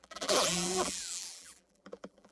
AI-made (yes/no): yes